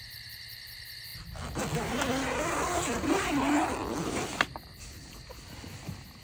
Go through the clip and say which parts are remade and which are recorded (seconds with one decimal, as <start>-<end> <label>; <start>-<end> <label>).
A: 0.0-6.2 recorded